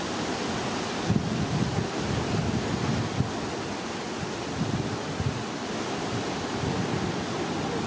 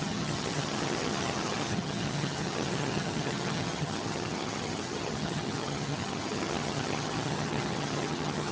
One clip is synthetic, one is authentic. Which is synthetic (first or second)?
second